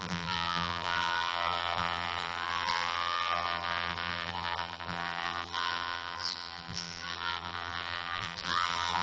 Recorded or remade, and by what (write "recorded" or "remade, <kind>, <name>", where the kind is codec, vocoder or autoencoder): remade, vocoder, BigVGAN v2